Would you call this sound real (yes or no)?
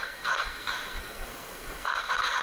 no